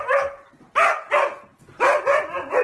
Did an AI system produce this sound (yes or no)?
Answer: no